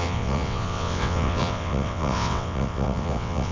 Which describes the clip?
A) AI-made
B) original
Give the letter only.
A